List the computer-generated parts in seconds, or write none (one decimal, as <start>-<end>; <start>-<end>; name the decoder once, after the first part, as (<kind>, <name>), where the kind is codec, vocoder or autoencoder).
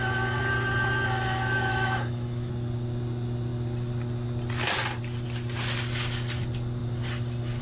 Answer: 1.7-2.5 (autoencoder, DAC-VAE)